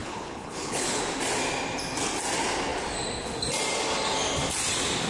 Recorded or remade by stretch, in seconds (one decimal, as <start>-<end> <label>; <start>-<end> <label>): 0.0-1.0 remade; 1.0-5.1 recorded